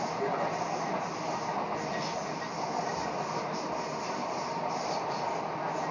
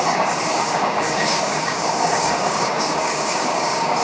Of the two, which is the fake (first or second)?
second